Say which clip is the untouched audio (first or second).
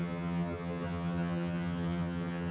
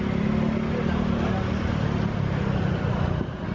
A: second